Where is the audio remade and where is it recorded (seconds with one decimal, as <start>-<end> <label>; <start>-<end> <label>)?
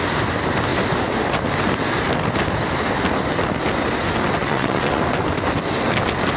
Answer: 0.0-4.4 recorded; 4.4-5.0 remade; 5.0-6.4 recorded